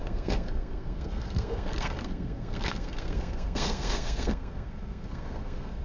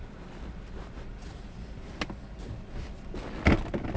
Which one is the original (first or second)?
second